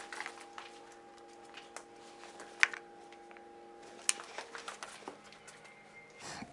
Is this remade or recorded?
recorded